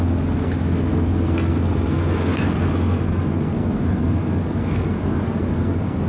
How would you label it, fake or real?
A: fake